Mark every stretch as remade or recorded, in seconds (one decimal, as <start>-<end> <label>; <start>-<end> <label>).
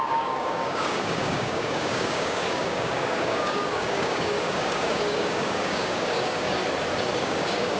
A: 0.0-6.6 remade; 6.6-7.2 recorded; 7.2-7.8 remade